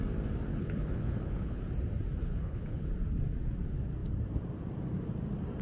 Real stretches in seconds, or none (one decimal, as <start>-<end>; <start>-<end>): 0.0-0.5; 1.6-2.2; 2.9-5.6